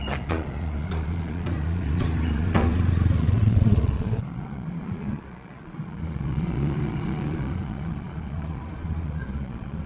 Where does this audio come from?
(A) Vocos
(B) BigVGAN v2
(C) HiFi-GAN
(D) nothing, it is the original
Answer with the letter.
A